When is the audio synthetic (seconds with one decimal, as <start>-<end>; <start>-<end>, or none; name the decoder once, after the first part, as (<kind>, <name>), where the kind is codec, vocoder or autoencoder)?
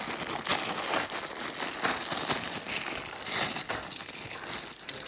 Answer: none